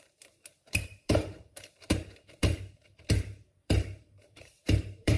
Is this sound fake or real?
fake